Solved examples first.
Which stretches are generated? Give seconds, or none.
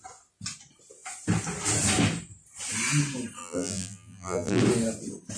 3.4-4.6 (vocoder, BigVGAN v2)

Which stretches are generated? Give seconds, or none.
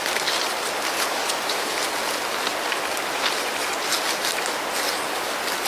none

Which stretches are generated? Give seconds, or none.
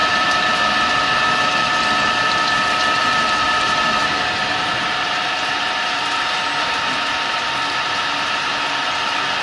0.0-1.2 (vocoder, BigVGAN v2); 3.0-7.5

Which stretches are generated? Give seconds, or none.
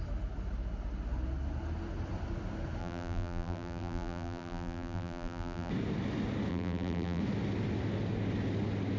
2.8-5.7 (vocoder, BigVGAN v2); 6.5-7.2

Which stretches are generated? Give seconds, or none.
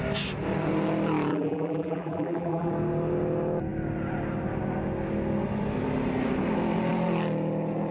1.3-2.7 (vocoder, BigVGAN v2)